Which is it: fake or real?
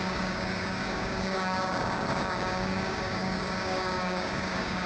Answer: fake